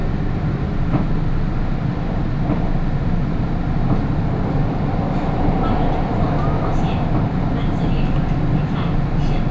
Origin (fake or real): real